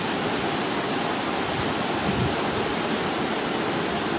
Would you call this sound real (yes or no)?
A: yes